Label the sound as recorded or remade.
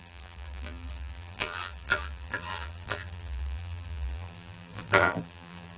remade